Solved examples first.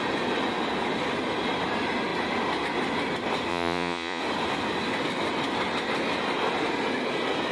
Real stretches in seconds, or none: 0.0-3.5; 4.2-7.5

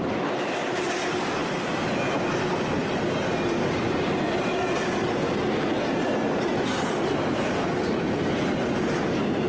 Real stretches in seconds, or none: 0.0-9.5